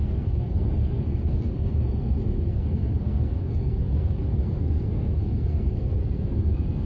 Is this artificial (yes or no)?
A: yes